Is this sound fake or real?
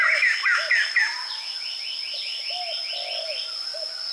real